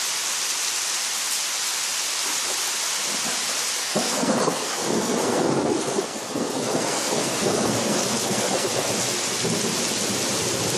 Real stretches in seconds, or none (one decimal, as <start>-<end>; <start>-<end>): 0.0-3.8; 8.9-10.8